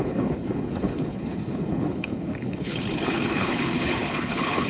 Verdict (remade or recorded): remade